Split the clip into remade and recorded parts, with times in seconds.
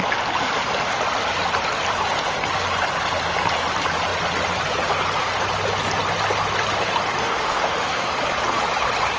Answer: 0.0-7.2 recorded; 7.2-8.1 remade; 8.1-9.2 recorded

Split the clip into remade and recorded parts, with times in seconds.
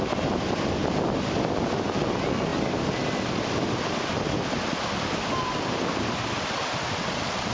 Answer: 0.0-7.5 recorded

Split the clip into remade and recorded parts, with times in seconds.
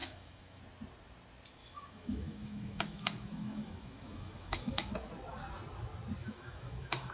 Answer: 0.0-0.6 remade; 0.6-1.6 recorded; 1.6-4.9 remade; 4.9-6.2 recorded; 6.2-7.1 remade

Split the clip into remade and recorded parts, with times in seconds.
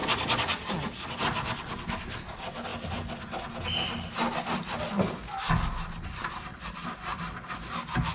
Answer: 0.0-8.1 recorded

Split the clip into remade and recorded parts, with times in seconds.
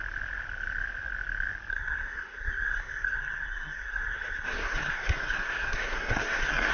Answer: 0.0-1.7 recorded; 1.7-6.7 remade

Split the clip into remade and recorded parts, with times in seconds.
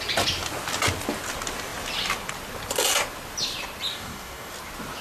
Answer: 0.0-3.9 recorded; 3.9-4.5 remade; 4.5-5.0 recorded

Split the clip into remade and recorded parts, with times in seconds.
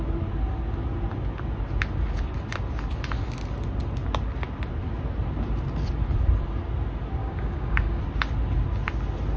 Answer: 0.0-7.2 recorded; 7.2-8.0 remade; 8.0-9.4 recorded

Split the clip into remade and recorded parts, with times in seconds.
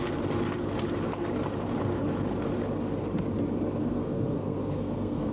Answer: 0.0-3.8 recorded; 3.8-5.3 remade